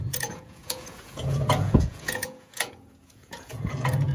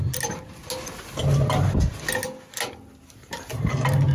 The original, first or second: second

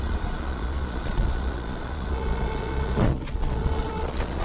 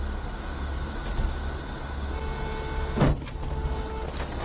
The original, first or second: second